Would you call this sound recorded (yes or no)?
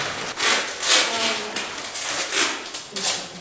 yes